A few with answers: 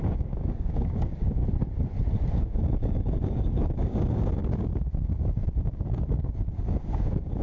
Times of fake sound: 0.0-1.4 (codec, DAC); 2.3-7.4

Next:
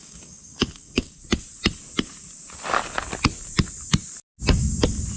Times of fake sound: 0.0-1.2 (codec, DAC)

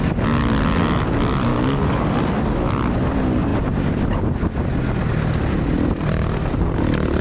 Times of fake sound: 1.5-2.2 (codec, DAC)

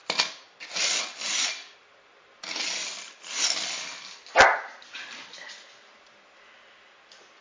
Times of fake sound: none

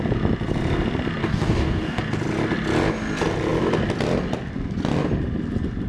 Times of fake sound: 1.2-2.0 (codec, DAC)

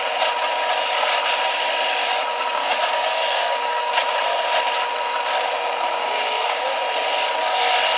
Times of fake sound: 2.3-3.9 (codec, DAC); 6.0-6.7